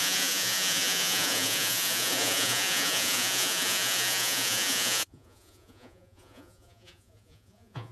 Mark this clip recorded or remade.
remade